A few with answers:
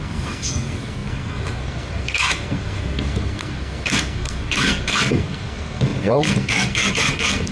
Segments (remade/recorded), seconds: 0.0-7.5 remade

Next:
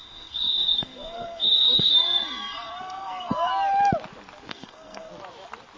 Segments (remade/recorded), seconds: 0.0-3.5 remade; 3.5-4.5 recorded; 4.5-5.1 remade; 5.1-5.8 recorded

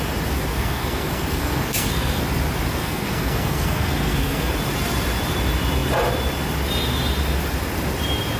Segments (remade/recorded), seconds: 0.0-0.5 recorded; 0.5-2.2 remade; 2.2-2.8 recorded; 2.8-4.5 remade; 4.5-8.4 recorded

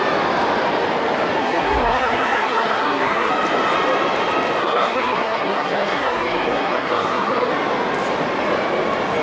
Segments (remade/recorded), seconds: 0.0-1.4 recorded; 1.4-3.3 remade; 3.3-4.6 recorded; 4.6-7.5 remade; 7.5-9.2 recorded

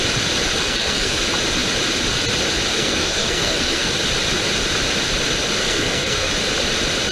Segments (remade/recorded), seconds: 0.0-0.6 recorded; 0.6-1.2 remade; 1.2-2.7 recorded; 2.7-3.9 remade; 3.9-5.6 recorded; 5.6-6.3 remade; 6.3-7.1 recorded